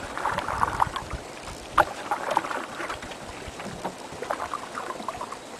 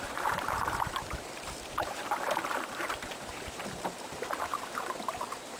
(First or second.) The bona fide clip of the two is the first